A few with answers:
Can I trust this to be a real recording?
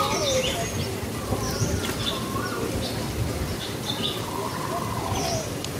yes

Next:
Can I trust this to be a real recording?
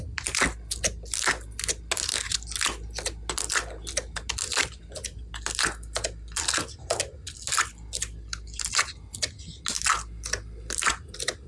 yes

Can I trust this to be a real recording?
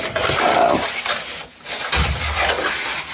no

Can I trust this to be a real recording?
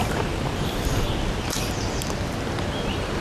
yes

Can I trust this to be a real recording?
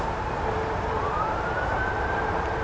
no